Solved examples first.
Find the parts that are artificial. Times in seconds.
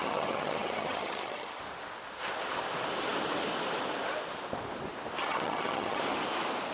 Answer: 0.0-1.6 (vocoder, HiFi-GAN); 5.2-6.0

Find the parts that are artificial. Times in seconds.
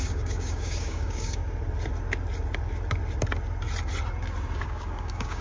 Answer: 0.0-1.4 (codec, DAC); 4.6-5.4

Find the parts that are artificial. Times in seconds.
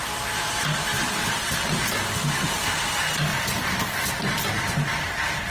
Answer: 0.9-1.6 (vocoder, BigVGAN v2); 3.3-4.2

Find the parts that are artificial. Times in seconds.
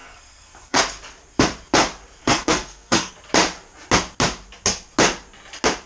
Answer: 0.0-0.8 (codec, SNAC); 2.2-3.1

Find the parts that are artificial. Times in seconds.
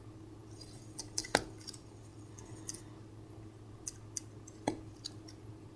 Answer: none